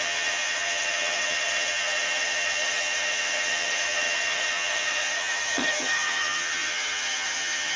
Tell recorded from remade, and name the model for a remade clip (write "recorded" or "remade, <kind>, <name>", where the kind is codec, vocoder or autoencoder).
remade, vocoder, HiFi-GAN